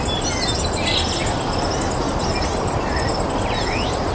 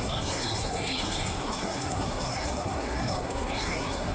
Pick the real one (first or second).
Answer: first